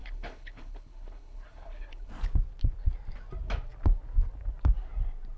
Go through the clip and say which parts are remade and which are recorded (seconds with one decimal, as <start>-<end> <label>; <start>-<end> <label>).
0.0-2.1 remade; 2.1-5.4 recorded